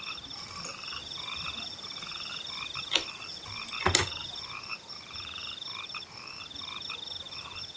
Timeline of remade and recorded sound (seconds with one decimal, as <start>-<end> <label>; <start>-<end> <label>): 0.0-7.8 recorded

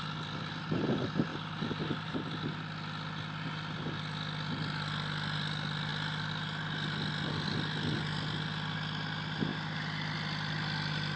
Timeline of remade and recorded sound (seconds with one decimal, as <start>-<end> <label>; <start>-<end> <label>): 0.0-11.2 recorded